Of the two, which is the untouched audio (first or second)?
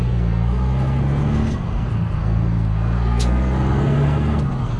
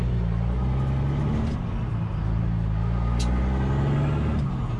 second